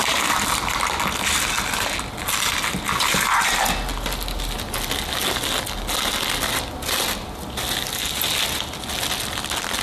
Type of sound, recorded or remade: recorded